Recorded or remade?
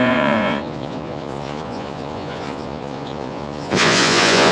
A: remade